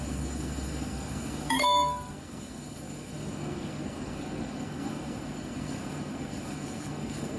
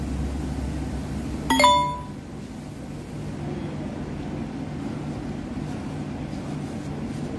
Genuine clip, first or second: second